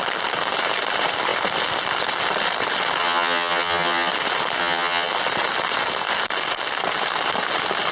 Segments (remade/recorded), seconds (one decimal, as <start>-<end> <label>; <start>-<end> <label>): 0.0-3.0 recorded; 3.0-4.1 remade; 4.1-4.6 recorded; 4.6-5.1 remade; 5.1-7.9 recorded